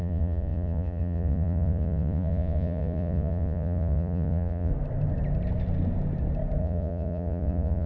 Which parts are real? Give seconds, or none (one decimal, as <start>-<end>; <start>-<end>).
4.7-6.6